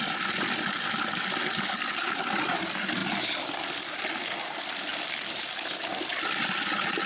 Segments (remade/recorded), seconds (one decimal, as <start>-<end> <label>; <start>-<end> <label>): 0.0-7.1 recorded

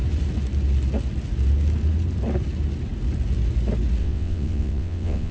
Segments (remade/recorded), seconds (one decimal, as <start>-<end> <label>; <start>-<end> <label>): 0.0-4.0 recorded; 4.0-5.3 remade

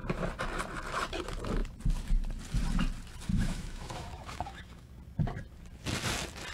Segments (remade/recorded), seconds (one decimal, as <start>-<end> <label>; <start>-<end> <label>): 0.0-3.3 recorded; 3.3-4.9 remade; 4.9-6.5 recorded

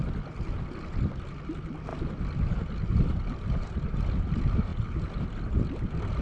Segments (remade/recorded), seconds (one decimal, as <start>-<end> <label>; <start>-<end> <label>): 0.0-6.2 recorded